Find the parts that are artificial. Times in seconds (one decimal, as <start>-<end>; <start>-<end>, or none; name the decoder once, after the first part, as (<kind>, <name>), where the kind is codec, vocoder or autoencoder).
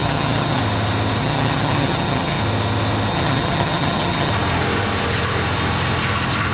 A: 0.0-0.6 (vocoder, HiFi-GAN); 1.2-2.4; 3.1-4.3